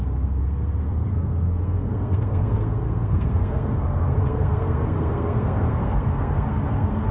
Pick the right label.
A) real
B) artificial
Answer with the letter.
B